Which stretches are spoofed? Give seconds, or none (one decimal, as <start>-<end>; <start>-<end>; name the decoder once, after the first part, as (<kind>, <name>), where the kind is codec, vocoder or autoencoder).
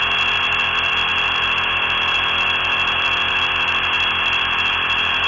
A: none